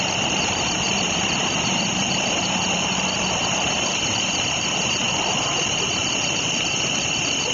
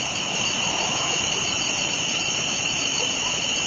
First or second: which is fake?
second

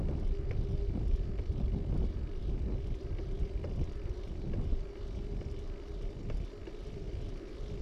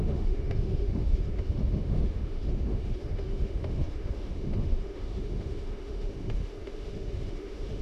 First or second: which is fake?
second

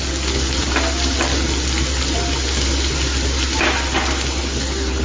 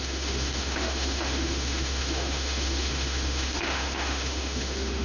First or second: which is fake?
second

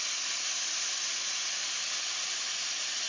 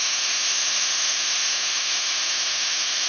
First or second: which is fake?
second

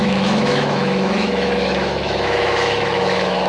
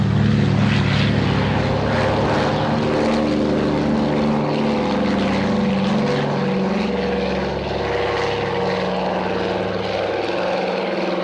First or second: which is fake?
first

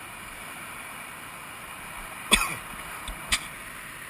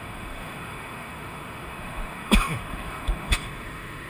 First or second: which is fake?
second